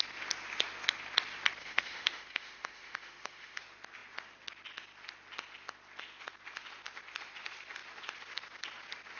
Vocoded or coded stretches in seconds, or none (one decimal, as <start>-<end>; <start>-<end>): 1.6-3.6